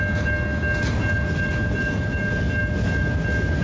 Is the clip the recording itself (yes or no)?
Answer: yes